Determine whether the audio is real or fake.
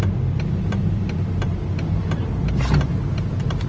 real